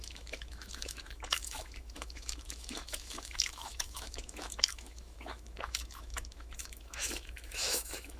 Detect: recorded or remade remade